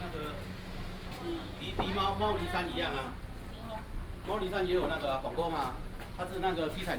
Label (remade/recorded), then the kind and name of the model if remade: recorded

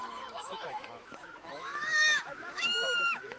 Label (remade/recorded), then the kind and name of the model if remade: remade, autoencoder, DAC-VAE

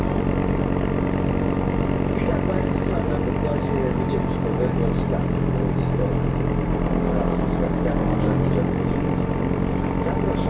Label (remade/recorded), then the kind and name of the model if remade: recorded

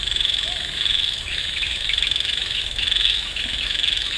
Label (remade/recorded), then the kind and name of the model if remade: remade, autoencoder, DAC-VAE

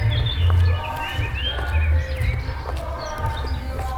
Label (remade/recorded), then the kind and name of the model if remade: recorded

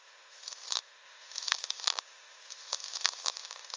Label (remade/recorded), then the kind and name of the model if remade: remade, autoencoder, DAC-VAE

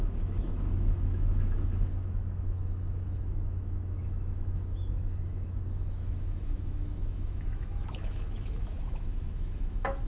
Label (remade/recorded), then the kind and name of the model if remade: remade, autoencoder, DAC-VAE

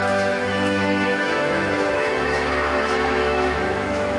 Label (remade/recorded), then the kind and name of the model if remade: remade, autoencoder, DAC-VAE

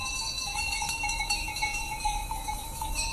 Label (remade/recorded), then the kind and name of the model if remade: remade, autoencoder, DAC-VAE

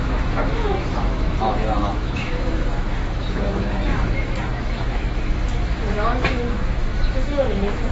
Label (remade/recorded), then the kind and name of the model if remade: remade, autoencoder, DAC-VAE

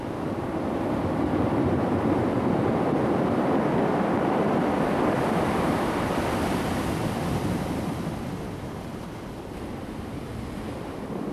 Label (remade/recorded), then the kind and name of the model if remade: recorded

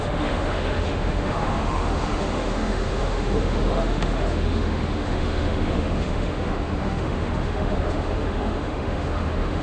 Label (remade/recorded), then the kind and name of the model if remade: remade, autoencoder, DAC-VAE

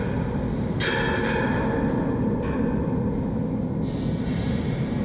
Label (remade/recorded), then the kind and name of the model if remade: recorded